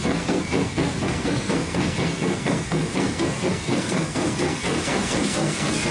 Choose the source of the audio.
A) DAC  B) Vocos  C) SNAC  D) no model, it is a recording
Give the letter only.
C